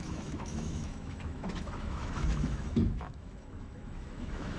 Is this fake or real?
fake